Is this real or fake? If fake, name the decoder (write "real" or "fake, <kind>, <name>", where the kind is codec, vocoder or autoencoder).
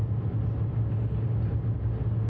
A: real